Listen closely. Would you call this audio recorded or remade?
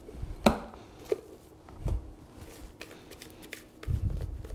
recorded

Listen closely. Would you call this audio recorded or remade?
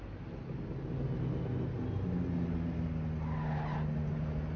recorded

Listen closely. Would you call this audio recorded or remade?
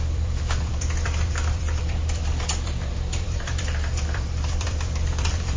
remade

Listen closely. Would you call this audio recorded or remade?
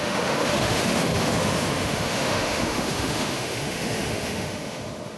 remade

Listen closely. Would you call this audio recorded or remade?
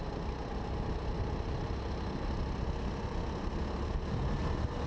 recorded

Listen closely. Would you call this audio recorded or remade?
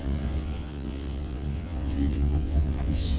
remade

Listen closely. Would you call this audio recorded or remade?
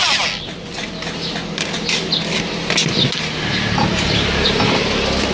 recorded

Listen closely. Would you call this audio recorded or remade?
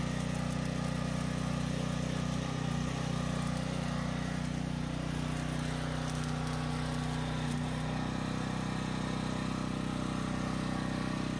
recorded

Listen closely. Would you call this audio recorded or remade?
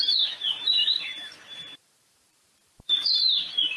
remade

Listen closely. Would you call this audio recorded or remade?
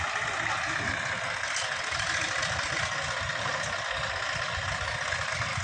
recorded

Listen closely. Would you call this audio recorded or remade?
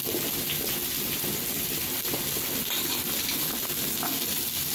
recorded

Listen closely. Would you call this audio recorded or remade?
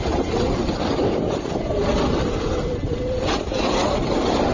recorded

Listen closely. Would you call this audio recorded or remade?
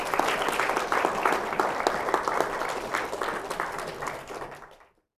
recorded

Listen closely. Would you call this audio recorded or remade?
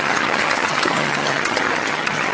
remade